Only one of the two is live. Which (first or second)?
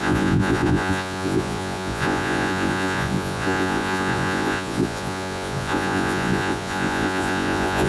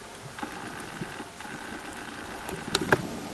second